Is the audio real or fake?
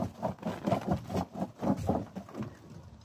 real